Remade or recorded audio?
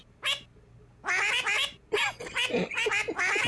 recorded